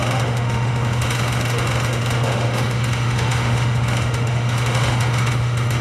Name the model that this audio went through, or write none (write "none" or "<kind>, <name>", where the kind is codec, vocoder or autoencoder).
autoencoder, DAC-VAE